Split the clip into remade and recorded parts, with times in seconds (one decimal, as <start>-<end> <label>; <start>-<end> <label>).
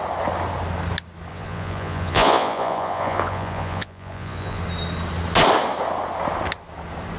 0.0-1.3 recorded; 1.3-4.6 remade; 4.6-7.2 recorded